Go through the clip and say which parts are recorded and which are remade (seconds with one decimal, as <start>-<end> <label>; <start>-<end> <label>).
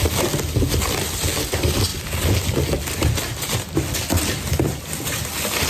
0.0-5.7 recorded